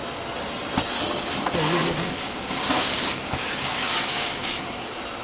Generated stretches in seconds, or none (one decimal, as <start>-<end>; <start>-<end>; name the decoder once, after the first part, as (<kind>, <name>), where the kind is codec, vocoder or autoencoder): 1.8-4.6 (codec, DAC)